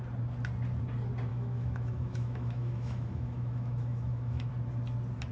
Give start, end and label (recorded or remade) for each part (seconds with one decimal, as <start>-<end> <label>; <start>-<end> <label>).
0.0-1.3 recorded; 1.3-4.5 remade; 4.5-5.3 recorded